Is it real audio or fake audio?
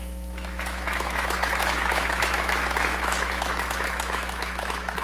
fake